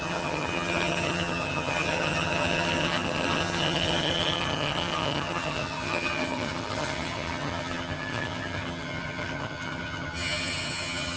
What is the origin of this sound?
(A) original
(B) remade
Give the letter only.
B